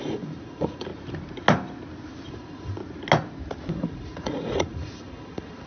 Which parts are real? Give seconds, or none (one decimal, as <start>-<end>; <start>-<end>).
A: 0.9-2.3; 2.8-3.7